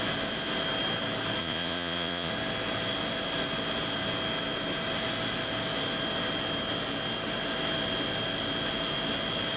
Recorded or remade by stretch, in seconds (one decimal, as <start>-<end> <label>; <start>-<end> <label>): 0.0-1.4 recorded; 1.4-2.3 remade; 2.3-9.6 recorded